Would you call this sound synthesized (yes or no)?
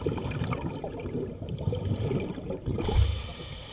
yes